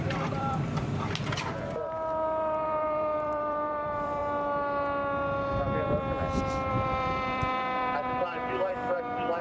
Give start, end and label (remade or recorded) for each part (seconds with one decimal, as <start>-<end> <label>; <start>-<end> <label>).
0.0-4.2 remade; 4.2-6.7 recorded; 6.7-9.4 remade